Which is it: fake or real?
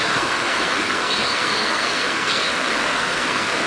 fake